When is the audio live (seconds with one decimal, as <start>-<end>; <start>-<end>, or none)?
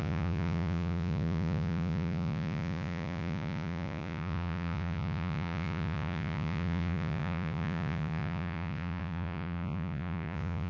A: none